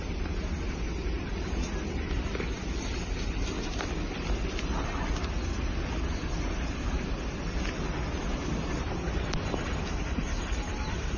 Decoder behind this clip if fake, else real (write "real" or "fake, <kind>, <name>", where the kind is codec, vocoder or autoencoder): real